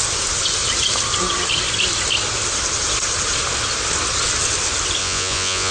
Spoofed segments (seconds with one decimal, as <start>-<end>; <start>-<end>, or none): 5.0-5.7